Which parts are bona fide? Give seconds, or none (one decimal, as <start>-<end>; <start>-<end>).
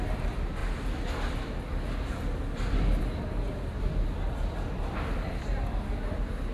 0.0-6.5